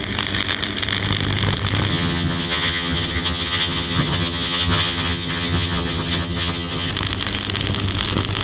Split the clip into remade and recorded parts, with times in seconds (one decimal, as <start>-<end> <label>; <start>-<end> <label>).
0.0-1.9 recorded; 1.9-6.9 remade; 6.9-8.4 recorded